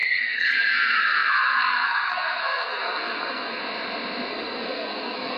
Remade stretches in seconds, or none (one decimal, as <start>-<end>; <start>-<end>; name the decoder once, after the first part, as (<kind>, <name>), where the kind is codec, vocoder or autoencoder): 0.0-3.6 (codec, SNAC); 4.3-5.4